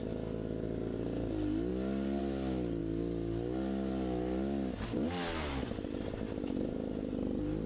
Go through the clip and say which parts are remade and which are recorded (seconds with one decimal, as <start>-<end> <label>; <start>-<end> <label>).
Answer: 0.0-7.7 recorded